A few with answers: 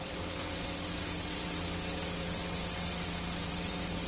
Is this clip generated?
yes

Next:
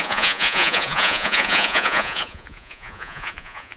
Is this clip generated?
yes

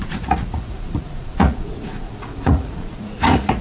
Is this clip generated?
yes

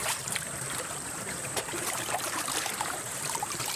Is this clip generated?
yes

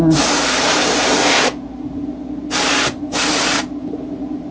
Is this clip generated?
no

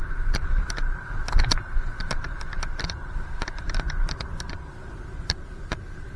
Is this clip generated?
yes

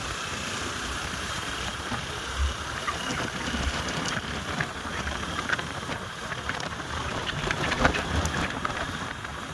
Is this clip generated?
yes